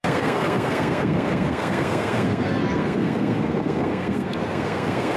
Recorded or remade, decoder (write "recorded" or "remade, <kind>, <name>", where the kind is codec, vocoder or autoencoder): remade, codec, SNAC